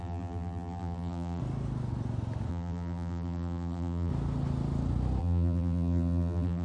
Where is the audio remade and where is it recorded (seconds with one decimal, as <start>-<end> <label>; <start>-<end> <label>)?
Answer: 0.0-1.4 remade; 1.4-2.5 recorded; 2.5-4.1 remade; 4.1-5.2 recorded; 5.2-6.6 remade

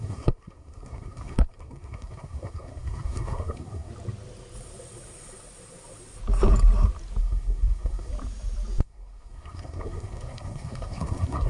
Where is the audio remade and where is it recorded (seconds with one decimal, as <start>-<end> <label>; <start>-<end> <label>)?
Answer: 0.0-3.9 remade; 3.9-7.2 recorded; 7.2-8.1 remade; 8.1-8.8 recorded; 8.8-11.5 remade

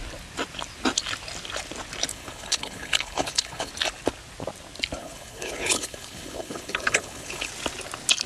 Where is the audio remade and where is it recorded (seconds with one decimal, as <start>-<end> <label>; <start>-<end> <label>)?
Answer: 0.0-2.1 recorded; 2.1-3.7 remade; 3.7-5.0 recorded; 5.0-7.5 remade; 7.5-8.3 recorded